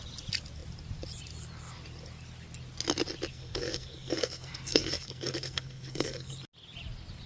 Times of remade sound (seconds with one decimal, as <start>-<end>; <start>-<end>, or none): 3.3-6.3

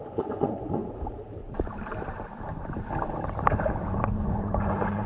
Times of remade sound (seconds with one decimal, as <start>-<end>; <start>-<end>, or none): 0.0-0.8; 3.9-5.1

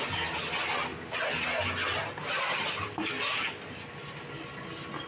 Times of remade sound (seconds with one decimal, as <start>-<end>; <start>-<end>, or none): none

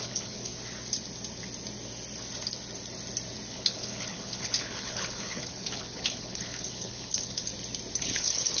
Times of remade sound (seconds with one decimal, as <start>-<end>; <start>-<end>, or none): 0.0-0.5; 3.5-7.5; 8.0-8.6

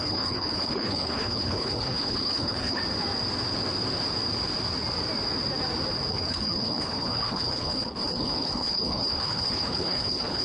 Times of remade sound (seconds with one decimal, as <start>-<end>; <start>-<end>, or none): 0.0-2.8; 6.1-10.4

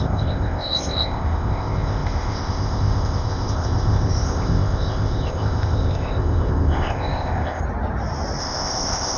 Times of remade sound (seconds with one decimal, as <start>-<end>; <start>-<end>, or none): 0.0-7.6; 8.4-9.2